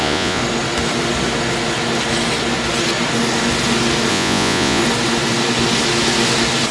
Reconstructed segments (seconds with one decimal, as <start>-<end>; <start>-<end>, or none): 0.0-0.4; 4.1-4.8